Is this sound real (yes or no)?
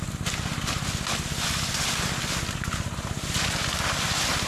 yes